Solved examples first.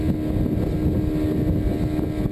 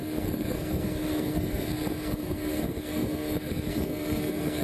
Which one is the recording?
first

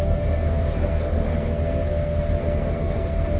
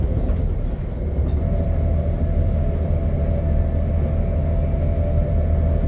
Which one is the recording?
second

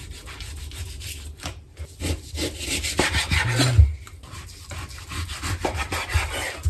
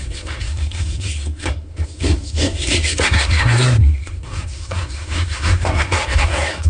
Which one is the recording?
first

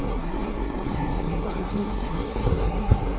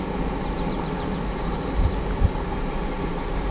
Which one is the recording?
second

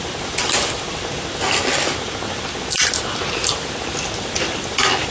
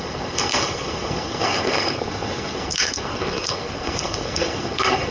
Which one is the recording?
first